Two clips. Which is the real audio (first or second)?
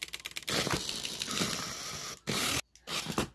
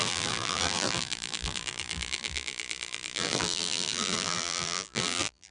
first